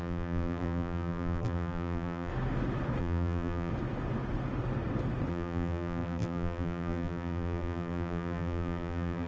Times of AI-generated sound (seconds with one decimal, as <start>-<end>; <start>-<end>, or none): 0.0-2.3; 3.0-3.7; 5.3-9.3